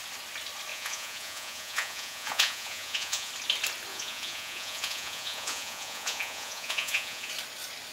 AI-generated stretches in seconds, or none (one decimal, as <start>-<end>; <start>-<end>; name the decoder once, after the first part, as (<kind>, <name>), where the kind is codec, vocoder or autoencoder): 0.7-3.3 (vocoder, Vocos); 3.9-7.3